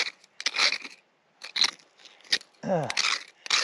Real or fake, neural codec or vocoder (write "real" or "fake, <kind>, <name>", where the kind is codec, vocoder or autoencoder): real